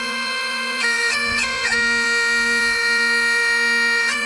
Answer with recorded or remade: remade